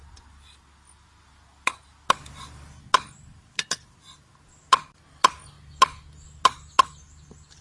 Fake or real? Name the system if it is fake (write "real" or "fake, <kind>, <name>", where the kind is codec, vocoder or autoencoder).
real